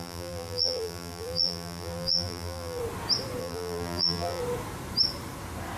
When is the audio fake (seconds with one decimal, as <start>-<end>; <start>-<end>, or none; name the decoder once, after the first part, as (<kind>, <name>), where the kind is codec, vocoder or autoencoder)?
0.0-2.8 (vocoder, BigVGAN v2); 3.4-4.4